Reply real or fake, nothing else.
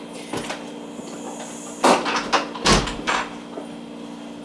real